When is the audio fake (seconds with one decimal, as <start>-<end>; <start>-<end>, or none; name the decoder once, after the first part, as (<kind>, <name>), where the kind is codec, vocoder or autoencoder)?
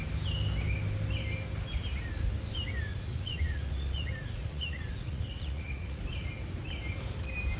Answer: 2.9-6.0 (vocoder, Vocos)